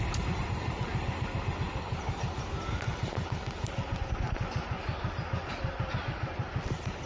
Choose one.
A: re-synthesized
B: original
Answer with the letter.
B